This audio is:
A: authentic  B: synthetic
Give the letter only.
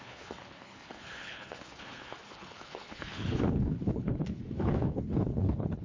B